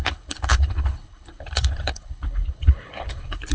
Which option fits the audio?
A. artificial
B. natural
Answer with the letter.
A